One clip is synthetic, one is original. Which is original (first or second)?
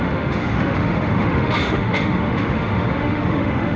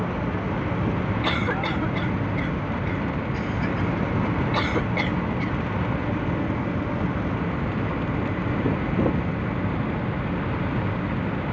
second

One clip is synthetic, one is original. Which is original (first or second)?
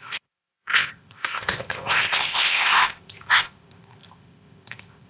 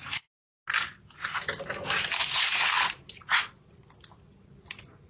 second